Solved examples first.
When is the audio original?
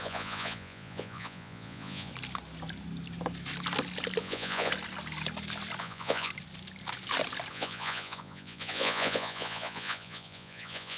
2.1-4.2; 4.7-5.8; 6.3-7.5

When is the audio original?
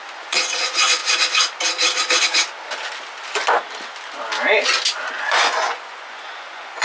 1.0-5.1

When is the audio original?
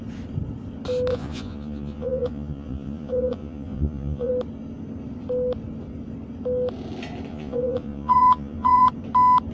0.0-1.1; 4.3-7.3; 8.9-9.5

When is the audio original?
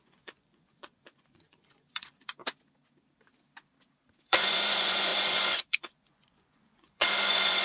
2.4-4.2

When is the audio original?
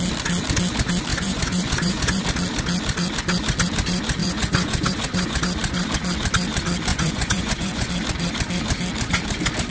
0.0-1.1; 2.2-4.2; 5.4-6.9; 7.9-9.7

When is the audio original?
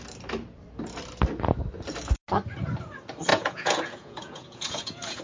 0.0-3.3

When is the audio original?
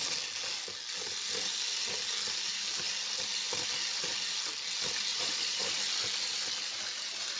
0.0-5.1; 5.8-7.4